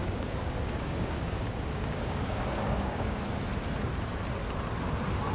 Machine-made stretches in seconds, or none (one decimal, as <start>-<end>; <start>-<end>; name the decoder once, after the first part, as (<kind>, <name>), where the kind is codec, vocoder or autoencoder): 0.0-3.2 (codec, DAC)